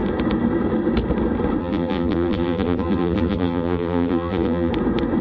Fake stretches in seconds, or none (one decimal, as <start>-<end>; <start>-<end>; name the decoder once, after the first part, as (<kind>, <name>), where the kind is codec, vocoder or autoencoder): 1.6-4.7 (vocoder, BigVGAN v2)